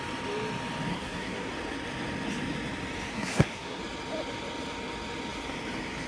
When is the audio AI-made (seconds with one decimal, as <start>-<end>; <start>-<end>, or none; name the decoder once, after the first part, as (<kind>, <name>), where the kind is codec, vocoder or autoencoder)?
0.9-1.5 (codec, SNAC); 3.1-3.8